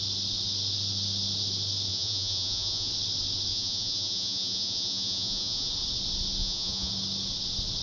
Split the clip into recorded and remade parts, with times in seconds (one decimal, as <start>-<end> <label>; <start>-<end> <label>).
0.0-1.9 recorded; 1.9-2.9 remade; 2.9-3.5 recorded; 3.5-5.7 remade; 5.7-6.4 recorded; 6.4-6.9 remade; 6.9-7.8 recorded